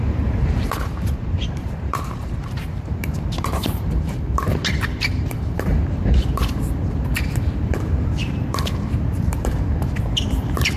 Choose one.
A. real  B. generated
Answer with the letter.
B